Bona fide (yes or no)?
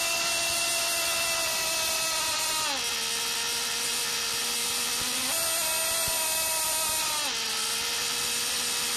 yes